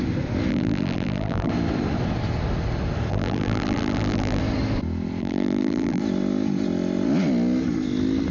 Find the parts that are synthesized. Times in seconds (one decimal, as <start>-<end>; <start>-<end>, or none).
0.5-1.5; 3.1-4.4; 5.2-6.0